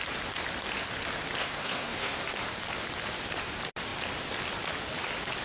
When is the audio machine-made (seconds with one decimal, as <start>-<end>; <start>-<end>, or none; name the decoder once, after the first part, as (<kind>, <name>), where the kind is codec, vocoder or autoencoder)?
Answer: 1.4-2.2 (codec, SNAC)